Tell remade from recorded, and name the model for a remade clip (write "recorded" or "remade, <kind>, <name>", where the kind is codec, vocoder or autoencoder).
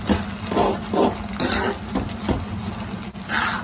recorded